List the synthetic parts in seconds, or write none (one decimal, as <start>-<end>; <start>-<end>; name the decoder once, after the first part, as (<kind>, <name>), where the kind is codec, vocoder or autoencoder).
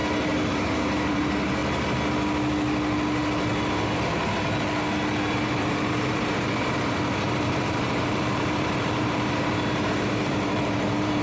0.5-1.6 (vocoder, BigVGAN v2); 5.3-11.2